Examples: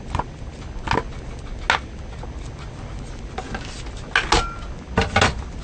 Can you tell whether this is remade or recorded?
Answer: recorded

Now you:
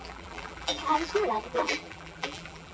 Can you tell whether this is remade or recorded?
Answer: remade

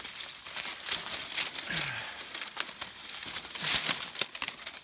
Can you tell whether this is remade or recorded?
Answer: recorded